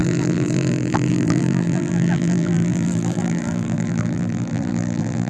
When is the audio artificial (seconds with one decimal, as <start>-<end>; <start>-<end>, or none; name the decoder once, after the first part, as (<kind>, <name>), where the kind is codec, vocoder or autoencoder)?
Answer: 0.0-5.3 (vocoder, BigVGAN v2)